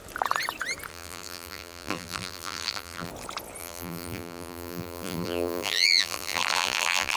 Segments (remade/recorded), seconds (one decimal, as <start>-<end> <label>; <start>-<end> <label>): 0.0-0.9 recorded; 0.9-3.1 remade; 3.1-3.6 recorded; 3.6-7.2 remade